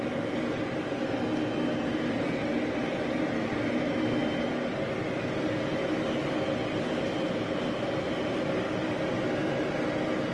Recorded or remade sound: recorded